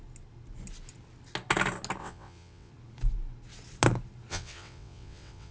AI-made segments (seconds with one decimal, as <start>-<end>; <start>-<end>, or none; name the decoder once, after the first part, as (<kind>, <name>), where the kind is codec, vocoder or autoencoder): 2.0-2.7 (vocoder, WaveNeXt); 4.3-5.5